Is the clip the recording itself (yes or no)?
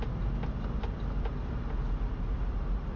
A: yes